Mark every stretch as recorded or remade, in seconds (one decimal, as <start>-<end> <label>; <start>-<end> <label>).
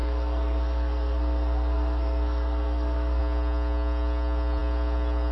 0.0-3.2 remade; 3.2-5.3 recorded